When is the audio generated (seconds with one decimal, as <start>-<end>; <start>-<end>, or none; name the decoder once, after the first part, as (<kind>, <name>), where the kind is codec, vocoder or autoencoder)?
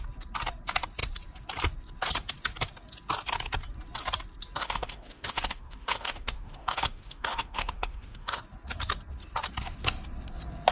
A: 4.6-8.4 (autoencoder, DAC-VAE)